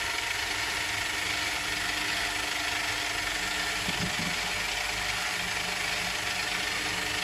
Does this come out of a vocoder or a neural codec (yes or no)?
no